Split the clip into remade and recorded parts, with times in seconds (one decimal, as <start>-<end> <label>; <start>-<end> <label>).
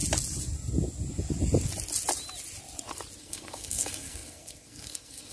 0.0-3.2 recorded; 3.2-5.3 remade